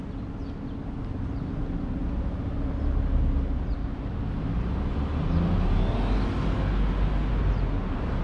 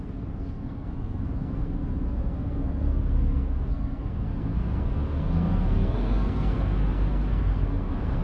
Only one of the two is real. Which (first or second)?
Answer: first